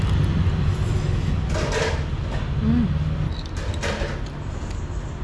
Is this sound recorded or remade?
recorded